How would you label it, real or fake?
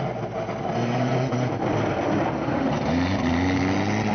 real